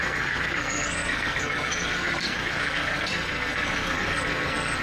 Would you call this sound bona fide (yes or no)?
no